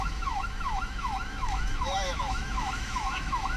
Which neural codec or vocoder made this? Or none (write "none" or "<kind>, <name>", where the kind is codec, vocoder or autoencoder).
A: autoencoder, DAC-VAE